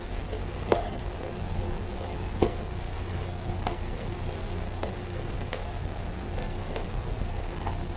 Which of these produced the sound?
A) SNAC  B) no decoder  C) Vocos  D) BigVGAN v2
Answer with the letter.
A